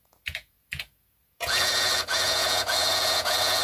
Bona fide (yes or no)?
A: no